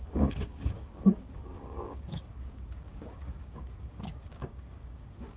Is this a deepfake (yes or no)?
yes